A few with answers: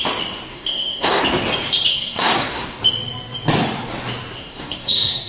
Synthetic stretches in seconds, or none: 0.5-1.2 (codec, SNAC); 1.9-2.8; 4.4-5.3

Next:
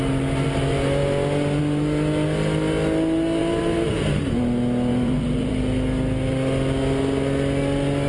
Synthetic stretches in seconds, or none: 3.4-4.2 (vocoder, BigVGAN v2); 4.9-5.5

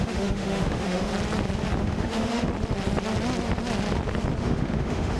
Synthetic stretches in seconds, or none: 0.0-1.1 (autoencoder, DAC-VAE); 1.8-2.5; 4.4-5.2

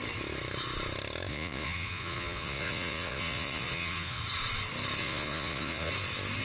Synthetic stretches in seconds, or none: 1.3-4.2 (vocoder, Vocos); 5.0-5.9

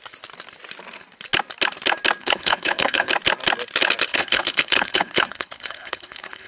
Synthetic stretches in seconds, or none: 2.2-3.1 (codec, HILCodec); 4.1-6.5